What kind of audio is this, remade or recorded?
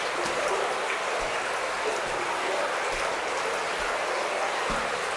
recorded